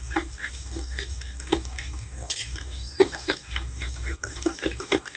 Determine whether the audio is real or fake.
fake